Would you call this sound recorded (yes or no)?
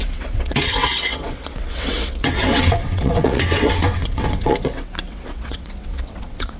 no